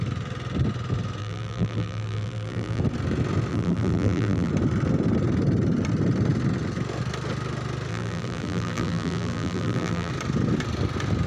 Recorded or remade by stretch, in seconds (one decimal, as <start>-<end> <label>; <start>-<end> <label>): 0.0-1.2 recorded; 1.2-2.8 remade; 2.8-3.5 recorded; 3.5-4.5 remade; 4.5-7.9 recorded; 7.9-10.1 remade; 10.1-11.3 recorded